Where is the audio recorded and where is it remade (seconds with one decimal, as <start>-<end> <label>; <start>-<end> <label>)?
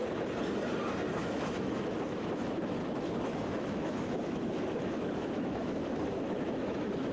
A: 0.0-1.2 recorded; 1.2-7.1 remade